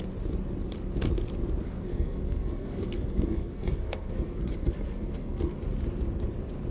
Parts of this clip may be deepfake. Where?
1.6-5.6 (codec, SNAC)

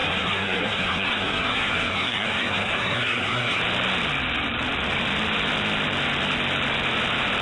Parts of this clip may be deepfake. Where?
0.0-3.6 (codec, SNAC)

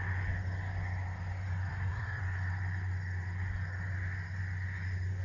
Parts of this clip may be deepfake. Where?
1.7-2.2 (codec, SNAC)

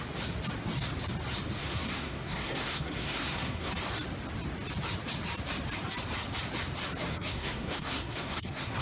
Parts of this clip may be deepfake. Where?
1.6-3.7 (codec, SNAC); 7.1-8.8

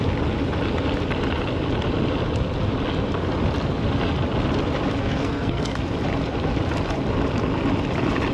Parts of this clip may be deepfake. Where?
5.0-5.8 (codec, SNAC)

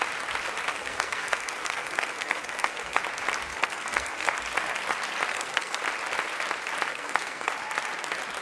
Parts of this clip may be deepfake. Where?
0.7-3.0 (codec, SNAC); 3.5-4.3; 5.3-5.8; 6.9-7.5

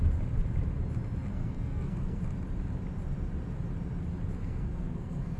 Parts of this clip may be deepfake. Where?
1.3-2.2 (codec, SNAC); 4.4-5.4

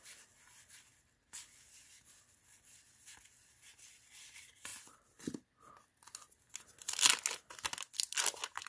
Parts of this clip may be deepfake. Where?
none